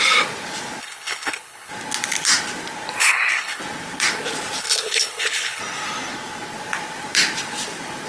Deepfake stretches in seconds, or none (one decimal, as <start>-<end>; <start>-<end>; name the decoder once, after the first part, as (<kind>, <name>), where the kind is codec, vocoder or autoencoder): 0.8-1.7 (codec, HILCodec); 3.0-3.6; 4.6-5.6